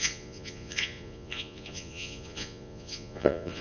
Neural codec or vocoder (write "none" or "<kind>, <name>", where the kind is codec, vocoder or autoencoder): vocoder, Vocos